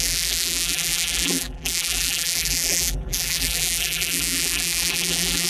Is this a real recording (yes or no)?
no